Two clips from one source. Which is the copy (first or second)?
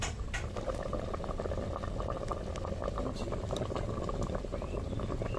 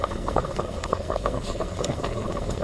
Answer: second